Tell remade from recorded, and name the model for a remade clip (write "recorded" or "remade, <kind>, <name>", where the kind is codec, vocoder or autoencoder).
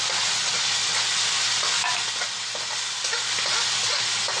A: recorded